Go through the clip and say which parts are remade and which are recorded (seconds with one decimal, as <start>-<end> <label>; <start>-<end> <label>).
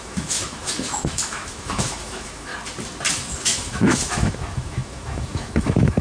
0.0-2.5 remade; 2.5-3.1 recorded; 3.1-6.0 remade